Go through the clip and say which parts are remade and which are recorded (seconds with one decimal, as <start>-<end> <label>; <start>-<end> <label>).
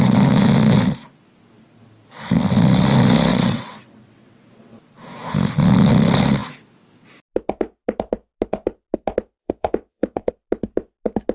0.0-3.3 recorded; 3.3-4.4 remade; 4.4-9.4 recorded; 9.4-10.3 remade; 10.3-11.3 recorded